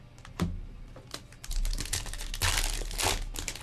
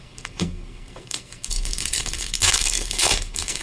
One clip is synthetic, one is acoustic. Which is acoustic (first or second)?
first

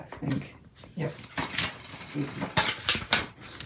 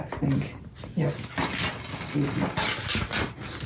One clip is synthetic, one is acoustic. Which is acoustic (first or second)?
second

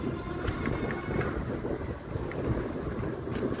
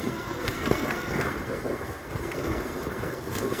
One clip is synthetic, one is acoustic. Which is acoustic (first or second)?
first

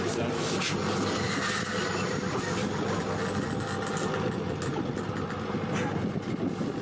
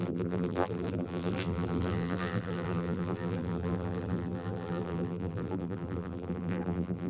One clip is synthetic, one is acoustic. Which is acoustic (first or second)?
first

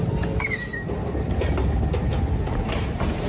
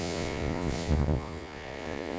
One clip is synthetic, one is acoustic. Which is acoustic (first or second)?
first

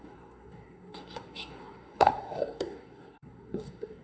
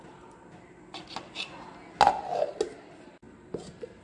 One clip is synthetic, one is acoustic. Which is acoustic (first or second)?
second